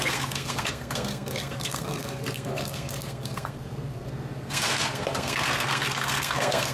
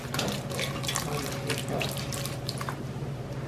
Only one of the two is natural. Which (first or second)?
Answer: second